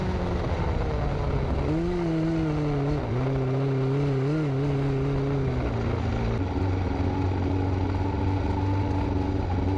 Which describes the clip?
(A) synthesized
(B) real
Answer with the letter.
B